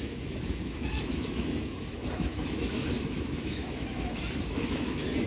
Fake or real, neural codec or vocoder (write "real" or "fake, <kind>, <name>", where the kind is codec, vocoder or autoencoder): fake, autoencoder, DAC-VAE